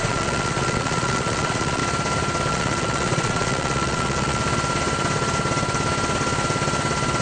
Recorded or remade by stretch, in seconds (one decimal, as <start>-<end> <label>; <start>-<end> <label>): 0.0-1.8 remade; 1.8-2.5 recorded; 2.5-4.4 remade; 4.4-7.2 recorded